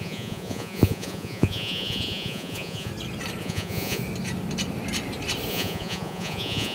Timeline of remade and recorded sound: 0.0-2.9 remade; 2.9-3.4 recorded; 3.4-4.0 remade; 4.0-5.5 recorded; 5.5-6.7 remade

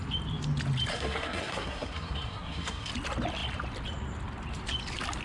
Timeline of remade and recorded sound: 0.0-0.9 recorded; 0.9-2.9 remade; 2.9-5.2 recorded

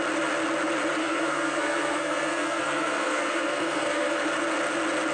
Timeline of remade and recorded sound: 0.0-1.0 recorded; 1.0-4.1 remade; 4.1-5.1 recorded

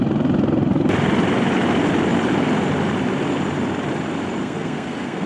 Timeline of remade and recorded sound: 0.0-4.4 recorded; 4.4-5.3 remade

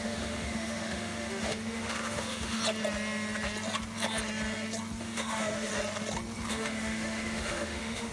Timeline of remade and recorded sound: 0.0-2.6 remade; 2.6-5.0 recorded; 5.0-5.7 remade; 5.7-6.5 recorded; 6.5-8.1 remade

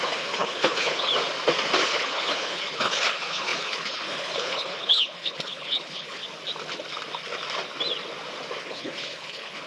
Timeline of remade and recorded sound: 0.0-1.1 remade; 1.1-1.9 recorded; 1.9-6.2 remade; 6.2-8.6 recorded; 8.6-9.7 remade

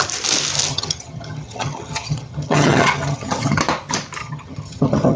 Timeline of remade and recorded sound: 0.0-0.7 recorded; 0.7-3.6 remade; 3.6-4.2 recorded; 4.2-5.2 remade

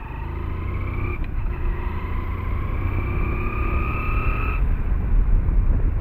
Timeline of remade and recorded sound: 0.0-1.1 recorded; 1.1-1.8 remade; 1.8-6.0 recorded